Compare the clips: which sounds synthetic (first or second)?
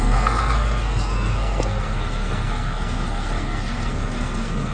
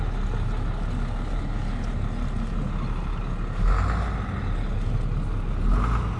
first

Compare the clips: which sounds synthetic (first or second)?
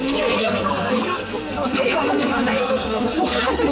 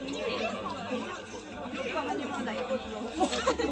first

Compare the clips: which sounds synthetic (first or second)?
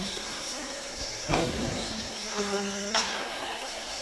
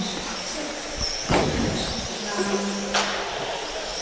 first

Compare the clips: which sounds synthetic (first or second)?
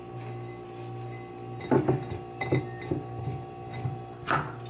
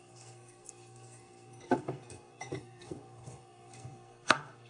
second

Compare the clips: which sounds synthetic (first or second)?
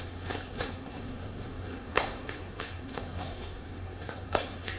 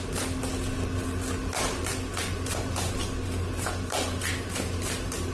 first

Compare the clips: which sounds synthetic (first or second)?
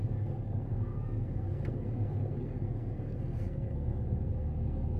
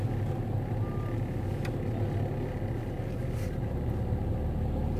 first